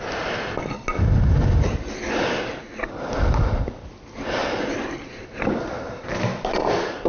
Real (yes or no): yes